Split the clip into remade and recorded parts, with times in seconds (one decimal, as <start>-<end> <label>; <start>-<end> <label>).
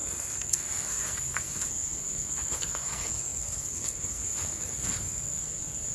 0.0-5.9 remade